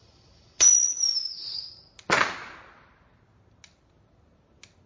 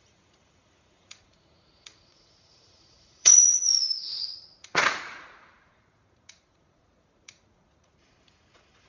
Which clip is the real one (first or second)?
first